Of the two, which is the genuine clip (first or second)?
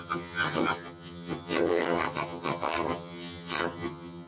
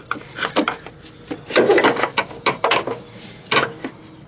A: second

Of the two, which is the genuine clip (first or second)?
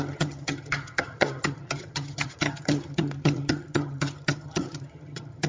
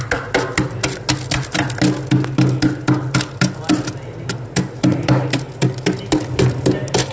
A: second